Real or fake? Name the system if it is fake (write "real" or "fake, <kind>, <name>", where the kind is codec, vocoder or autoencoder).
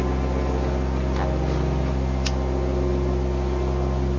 real